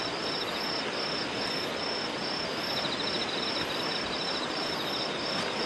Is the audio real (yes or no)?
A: yes